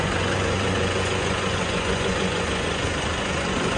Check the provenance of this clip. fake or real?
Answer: fake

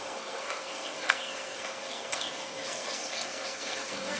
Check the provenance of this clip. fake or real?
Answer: fake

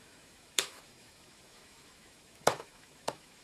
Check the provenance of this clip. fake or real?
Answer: fake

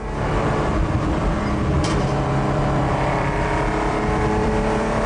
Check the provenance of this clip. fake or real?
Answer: fake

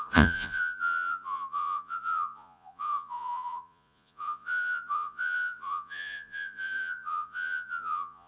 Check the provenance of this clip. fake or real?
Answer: fake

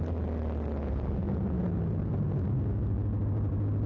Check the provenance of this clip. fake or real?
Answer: real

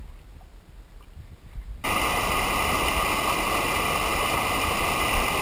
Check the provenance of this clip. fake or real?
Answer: real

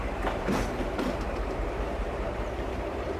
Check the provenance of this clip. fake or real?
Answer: fake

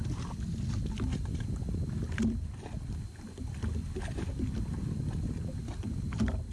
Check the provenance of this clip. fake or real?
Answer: real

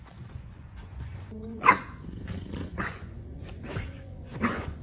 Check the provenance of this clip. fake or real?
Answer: fake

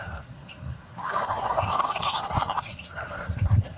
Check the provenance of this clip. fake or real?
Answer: fake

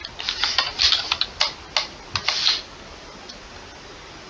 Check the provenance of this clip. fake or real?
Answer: real